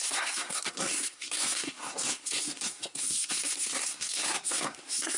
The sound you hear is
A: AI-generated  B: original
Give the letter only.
A